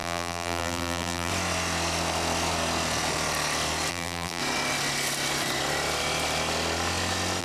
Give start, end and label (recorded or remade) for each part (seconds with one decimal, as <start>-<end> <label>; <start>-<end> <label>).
0.0-1.3 remade; 1.3-3.9 recorded; 3.9-4.4 remade; 4.4-7.4 recorded